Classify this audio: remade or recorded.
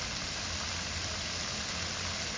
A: recorded